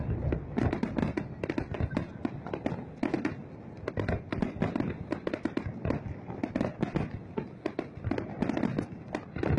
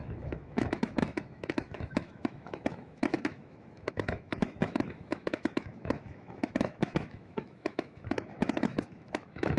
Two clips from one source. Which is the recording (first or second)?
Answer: first